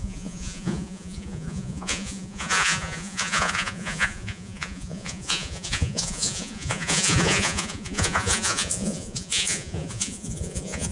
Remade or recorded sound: remade